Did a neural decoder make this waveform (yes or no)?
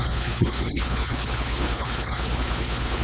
yes